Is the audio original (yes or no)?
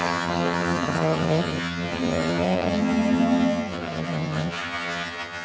no